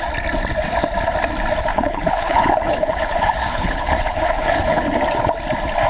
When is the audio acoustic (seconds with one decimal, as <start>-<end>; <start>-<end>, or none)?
0.0-1.7; 4.8-5.9